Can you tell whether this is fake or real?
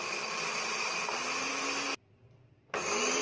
real